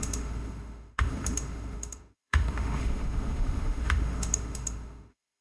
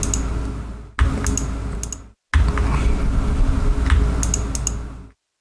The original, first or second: second